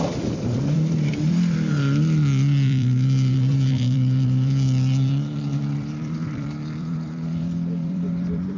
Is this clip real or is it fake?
fake